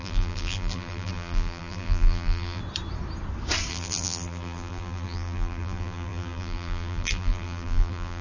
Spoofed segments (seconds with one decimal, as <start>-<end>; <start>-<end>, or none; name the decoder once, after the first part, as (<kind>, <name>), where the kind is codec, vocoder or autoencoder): 0.0-2.6 (vocoder, BigVGAN v2); 3.7-8.2